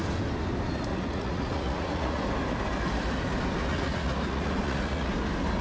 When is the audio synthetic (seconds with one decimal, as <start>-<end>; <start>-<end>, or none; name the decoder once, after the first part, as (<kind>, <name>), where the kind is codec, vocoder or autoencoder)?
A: 0.9-2.2 (vocoder, Vocos); 3.7-5.1